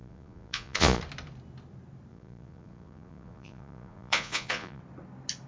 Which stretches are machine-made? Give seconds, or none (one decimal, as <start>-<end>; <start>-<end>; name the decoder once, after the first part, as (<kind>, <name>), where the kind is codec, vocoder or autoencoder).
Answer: 0.0-1.0 (vocoder, Vocos); 2.1-4.8